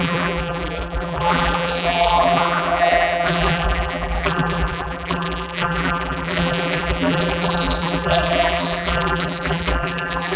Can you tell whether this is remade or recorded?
remade